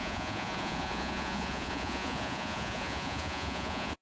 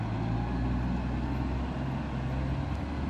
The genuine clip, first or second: second